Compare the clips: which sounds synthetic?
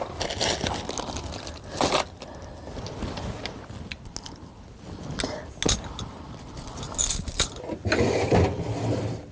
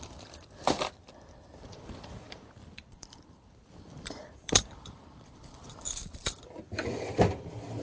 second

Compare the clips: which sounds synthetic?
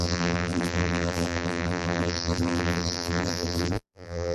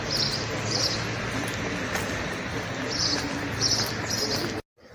first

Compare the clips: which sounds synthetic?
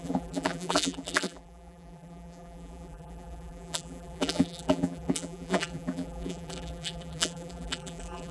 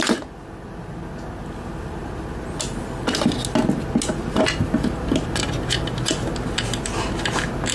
first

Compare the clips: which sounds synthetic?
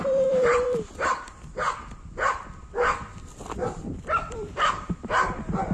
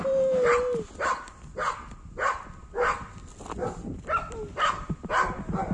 first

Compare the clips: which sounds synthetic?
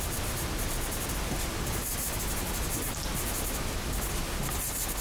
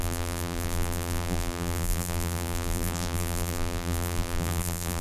second